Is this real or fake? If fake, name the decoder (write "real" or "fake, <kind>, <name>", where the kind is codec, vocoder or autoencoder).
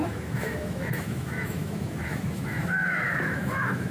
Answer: fake, autoencoder, DAC-VAE